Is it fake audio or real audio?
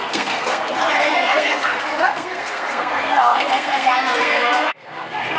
fake